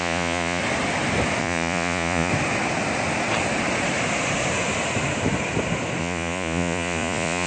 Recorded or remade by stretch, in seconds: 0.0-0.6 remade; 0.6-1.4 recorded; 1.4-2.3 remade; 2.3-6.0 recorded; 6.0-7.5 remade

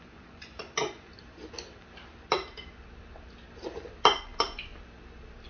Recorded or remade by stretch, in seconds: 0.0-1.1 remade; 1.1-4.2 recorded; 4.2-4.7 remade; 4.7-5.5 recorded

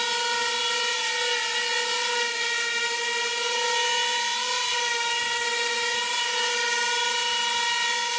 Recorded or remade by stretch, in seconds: 0.0-8.2 recorded

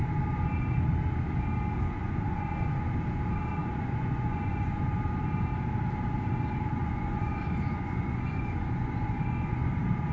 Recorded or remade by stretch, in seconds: 0.0-2.0 recorded; 2.0-2.9 remade; 2.9-3.6 recorded; 3.6-5.0 remade; 5.0-6.8 recorded; 6.8-9.7 remade; 9.7-10.1 recorded

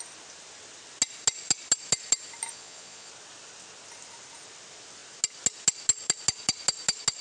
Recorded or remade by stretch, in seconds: 0.0-2.5 recorded; 2.5-3.1 remade; 3.1-7.2 recorded

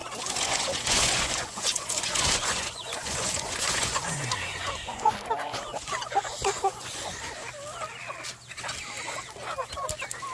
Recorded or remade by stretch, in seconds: 0.0-5.1 remade; 5.1-5.7 recorded; 5.7-7.3 remade; 7.3-10.3 recorded